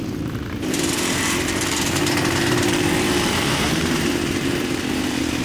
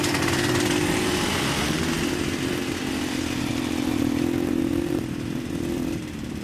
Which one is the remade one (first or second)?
first